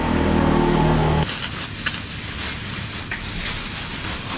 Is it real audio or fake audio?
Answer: real